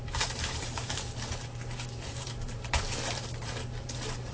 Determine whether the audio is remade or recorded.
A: remade